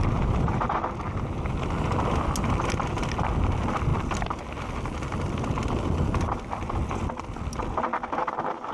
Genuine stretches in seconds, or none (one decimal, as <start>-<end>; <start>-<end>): 0.0-8.7